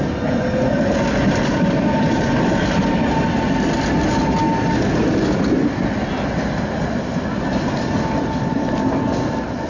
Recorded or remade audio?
recorded